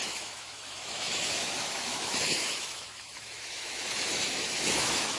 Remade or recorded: remade